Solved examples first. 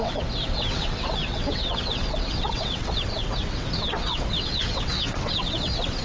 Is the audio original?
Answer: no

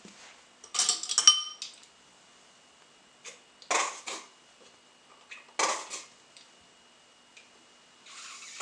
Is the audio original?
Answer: yes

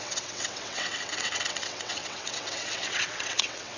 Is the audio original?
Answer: no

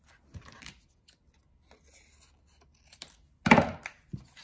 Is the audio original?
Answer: yes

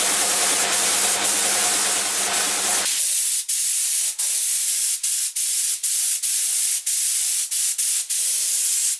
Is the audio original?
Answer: yes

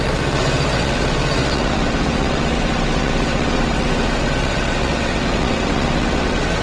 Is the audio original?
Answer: no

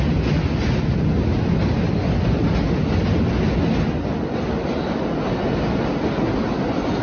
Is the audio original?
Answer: yes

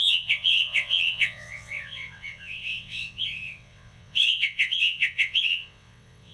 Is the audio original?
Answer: no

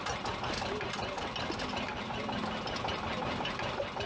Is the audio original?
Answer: yes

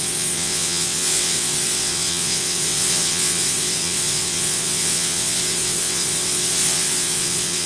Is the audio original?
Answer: no